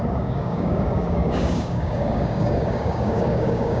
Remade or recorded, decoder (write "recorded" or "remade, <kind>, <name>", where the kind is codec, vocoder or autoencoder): remade, codec, DAC